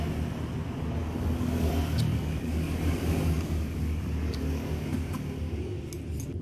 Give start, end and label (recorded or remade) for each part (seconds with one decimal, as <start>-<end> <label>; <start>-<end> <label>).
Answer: 0.0-1.0 recorded; 1.0-1.7 remade; 1.7-2.1 recorded; 2.1-5.9 remade; 5.9-6.4 recorded